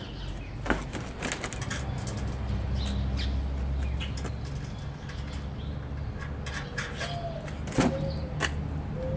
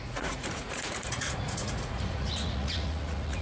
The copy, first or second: second